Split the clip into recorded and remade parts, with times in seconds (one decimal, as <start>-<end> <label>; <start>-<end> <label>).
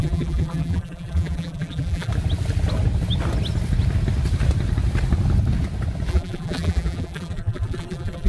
0.0-2.1 remade; 2.1-6.1 recorded; 6.1-8.3 remade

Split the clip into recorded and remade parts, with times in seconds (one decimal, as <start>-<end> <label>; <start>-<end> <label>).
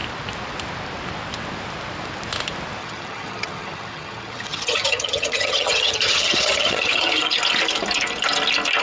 0.0-2.8 recorded; 2.8-7.4 remade; 7.4-8.8 recorded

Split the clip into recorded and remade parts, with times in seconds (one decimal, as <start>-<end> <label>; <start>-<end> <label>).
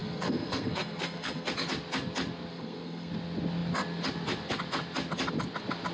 0.0-1.5 remade; 1.5-2.5 recorded; 2.5-3.1 remade; 3.1-5.9 recorded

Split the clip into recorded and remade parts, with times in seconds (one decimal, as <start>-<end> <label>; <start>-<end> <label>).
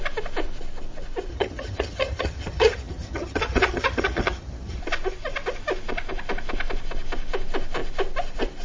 0.0-1.3 recorded; 1.3-4.8 remade; 4.8-8.6 recorded